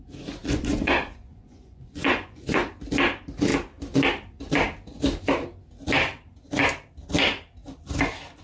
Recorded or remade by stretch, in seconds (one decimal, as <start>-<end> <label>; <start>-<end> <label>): 0.0-0.4 recorded; 0.4-2.7 remade; 2.7-8.4 recorded